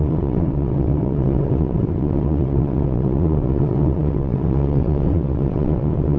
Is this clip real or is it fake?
fake